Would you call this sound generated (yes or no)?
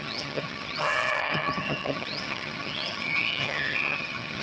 yes